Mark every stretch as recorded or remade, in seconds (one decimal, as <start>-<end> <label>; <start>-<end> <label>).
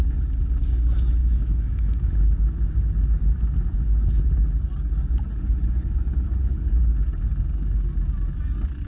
0.0-1.2 recorded; 1.2-2.1 remade; 2.1-8.9 recorded